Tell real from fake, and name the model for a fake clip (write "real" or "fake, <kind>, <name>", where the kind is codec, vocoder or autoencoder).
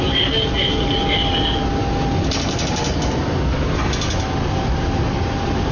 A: real